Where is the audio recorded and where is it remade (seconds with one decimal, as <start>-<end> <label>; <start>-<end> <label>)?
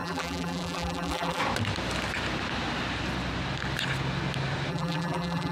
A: 0.0-1.4 remade; 1.4-4.7 recorded; 4.7-5.5 remade